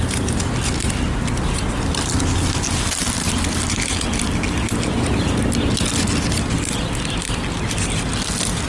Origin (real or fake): real